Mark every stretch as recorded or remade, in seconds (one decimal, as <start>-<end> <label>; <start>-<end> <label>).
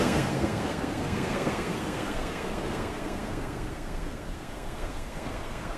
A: 0.0-5.8 remade